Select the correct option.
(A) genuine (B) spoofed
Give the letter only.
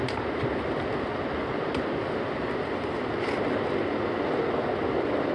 A